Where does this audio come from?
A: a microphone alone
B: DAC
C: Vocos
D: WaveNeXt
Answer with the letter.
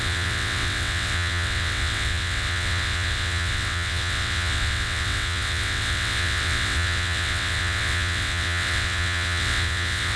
D